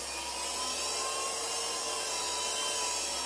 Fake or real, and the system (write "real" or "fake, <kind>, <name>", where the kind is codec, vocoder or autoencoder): real